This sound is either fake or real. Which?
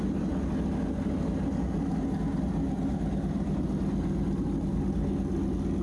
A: real